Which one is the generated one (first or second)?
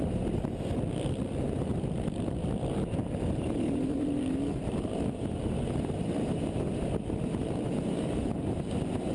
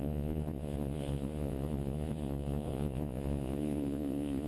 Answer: second